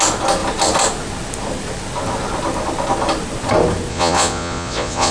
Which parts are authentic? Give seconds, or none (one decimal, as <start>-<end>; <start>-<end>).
0.0-3.9